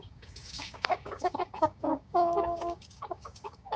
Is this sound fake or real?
fake